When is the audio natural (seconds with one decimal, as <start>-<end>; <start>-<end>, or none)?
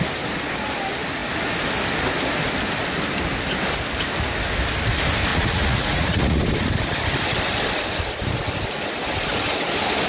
0.0-5.3; 6.4-10.1